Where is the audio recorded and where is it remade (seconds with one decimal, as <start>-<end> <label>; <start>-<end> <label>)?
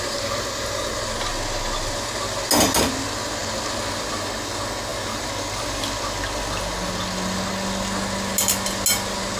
0.0-9.4 recorded